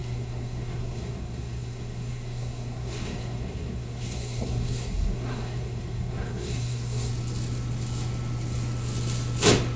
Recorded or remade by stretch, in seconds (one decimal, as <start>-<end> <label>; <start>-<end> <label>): 0.0-7.1 remade; 7.1-9.8 recorded

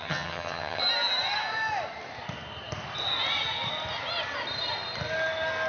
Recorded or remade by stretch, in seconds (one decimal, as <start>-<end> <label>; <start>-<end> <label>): 0.0-0.8 remade; 0.8-5.7 recorded